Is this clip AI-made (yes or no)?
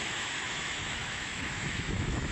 yes